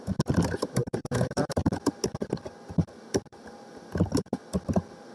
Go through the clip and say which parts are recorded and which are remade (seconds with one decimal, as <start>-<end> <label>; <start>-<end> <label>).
0.0-1.0 recorded; 1.0-1.8 remade; 1.8-3.3 recorded; 3.3-4.3 remade; 4.3-5.1 recorded